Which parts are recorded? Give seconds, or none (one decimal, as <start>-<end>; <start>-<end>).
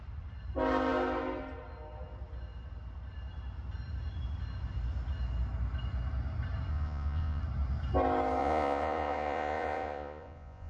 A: 0.0-6.7; 7.4-8.4